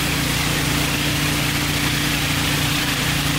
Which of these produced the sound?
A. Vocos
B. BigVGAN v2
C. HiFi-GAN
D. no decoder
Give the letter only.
B